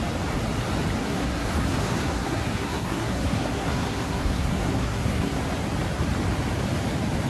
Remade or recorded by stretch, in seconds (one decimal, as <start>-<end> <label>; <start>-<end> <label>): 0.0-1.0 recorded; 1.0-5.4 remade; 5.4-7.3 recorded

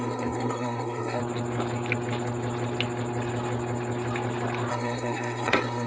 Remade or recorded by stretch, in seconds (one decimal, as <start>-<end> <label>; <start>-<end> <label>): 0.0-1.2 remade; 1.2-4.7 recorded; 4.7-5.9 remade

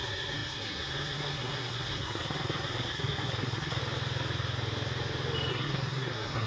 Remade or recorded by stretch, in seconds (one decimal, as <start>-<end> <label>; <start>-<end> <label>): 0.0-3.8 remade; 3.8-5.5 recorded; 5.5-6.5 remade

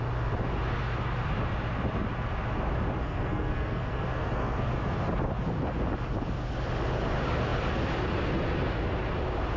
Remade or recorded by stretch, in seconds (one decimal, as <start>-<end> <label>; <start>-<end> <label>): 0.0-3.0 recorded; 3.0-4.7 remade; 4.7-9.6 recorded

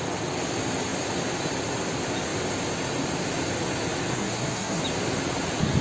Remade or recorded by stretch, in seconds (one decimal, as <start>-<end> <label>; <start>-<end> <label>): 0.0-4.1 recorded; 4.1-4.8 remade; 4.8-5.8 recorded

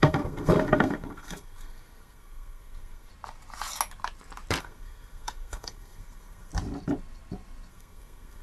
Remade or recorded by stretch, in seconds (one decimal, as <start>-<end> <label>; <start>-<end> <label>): 0.0-3.1 remade; 3.1-4.6 recorded; 4.6-6.5 remade; 6.5-7.7 recorded; 7.7-8.4 remade

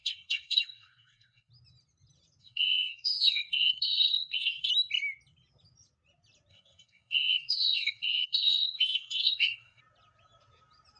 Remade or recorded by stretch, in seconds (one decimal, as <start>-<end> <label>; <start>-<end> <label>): 0.0-1.5 remade; 1.5-2.4 recorded; 2.4-4.7 remade; 4.7-6.5 recorded; 6.5-9.8 remade; 9.8-11.0 recorded